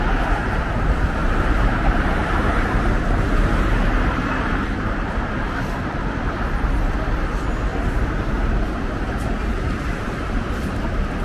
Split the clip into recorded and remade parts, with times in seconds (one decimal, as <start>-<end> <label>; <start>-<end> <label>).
0.0-1.2 recorded; 1.2-5.1 remade; 5.1-7.7 recorded; 7.7-10.2 remade; 10.2-11.2 recorded